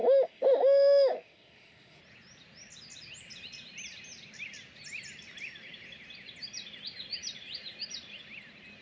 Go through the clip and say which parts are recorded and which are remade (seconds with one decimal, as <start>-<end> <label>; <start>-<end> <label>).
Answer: 0.0-2.0 remade; 2.0-8.8 recorded

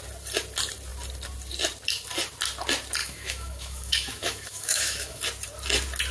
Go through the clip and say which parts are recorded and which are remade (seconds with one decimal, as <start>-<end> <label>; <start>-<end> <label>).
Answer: 0.0-3.0 recorded; 3.0-5.2 remade; 5.2-6.1 recorded

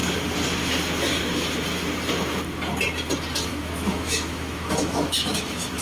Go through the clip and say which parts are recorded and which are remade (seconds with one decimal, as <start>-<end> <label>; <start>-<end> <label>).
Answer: 0.0-3.5 recorded; 3.5-5.8 remade